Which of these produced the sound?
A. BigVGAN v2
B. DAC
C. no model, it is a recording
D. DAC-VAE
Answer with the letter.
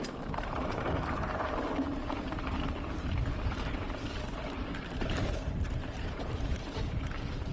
A